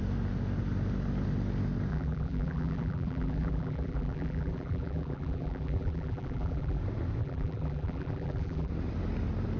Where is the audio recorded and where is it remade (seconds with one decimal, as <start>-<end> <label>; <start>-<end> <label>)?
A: 0.0-1.9 recorded; 1.9-6.8 remade; 6.8-7.2 recorded; 7.2-8.7 remade; 8.7-9.6 recorded